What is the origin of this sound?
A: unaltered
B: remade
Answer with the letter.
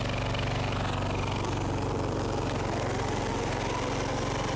A